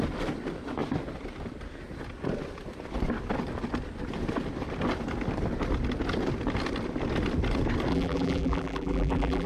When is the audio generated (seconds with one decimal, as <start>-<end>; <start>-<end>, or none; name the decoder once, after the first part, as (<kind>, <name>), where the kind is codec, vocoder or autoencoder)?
7.9-9.5 (vocoder, BigVGAN v2)